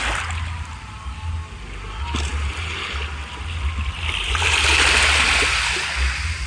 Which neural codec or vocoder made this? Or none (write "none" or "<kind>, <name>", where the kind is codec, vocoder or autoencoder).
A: none